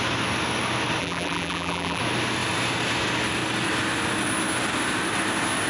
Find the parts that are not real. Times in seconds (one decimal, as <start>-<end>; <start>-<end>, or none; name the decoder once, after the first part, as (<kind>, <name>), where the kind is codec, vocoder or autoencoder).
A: 1.0-2.0 (vocoder, BigVGAN v2)